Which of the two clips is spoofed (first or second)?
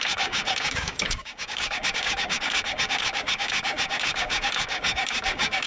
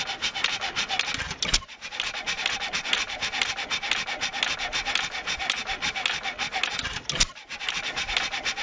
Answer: first